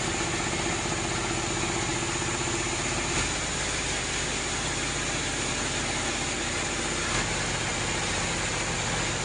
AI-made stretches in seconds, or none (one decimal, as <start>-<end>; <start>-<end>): none